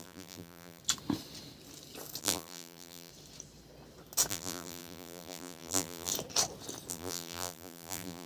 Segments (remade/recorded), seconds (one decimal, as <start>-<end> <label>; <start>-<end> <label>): 0.0-0.8 remade; 0.8-2.2 recorded; 2.2-3.1 remade; 3.1-4.3 recorded; 4.3-6.1 remade; 6.1-6.9 recorded; 6.9-8.3 remade